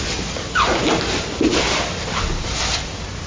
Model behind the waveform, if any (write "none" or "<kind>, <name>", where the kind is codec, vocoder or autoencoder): none